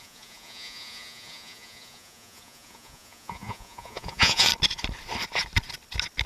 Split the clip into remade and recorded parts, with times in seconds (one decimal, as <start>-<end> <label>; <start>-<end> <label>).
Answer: 0.0-4.5 remade; 4.5-6.3 recorded